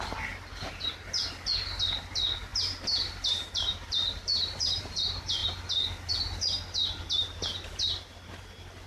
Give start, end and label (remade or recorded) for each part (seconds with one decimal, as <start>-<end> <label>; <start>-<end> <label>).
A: 0.0-2.5 recorded; 2.5-5.0 remade; 5.0-8.9 recorded